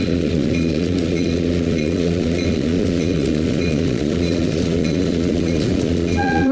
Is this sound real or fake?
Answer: fake